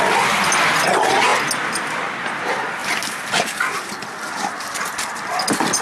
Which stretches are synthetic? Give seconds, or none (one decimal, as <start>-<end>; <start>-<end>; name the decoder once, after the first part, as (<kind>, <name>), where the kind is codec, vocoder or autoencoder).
none

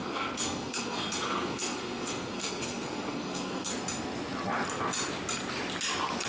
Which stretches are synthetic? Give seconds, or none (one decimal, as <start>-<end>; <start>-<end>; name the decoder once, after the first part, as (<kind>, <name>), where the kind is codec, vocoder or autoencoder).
0.0-3.7 (codec, SNAC)

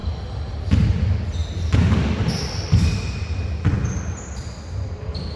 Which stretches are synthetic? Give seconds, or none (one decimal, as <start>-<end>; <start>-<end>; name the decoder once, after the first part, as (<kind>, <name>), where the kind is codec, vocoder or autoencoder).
none

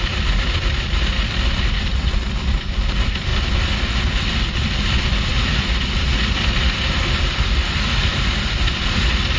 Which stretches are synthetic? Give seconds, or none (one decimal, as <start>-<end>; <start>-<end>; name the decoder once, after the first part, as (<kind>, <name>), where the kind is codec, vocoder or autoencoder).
0.0-3.3 (vocoder, BigVGAN v2); 4.1-9.4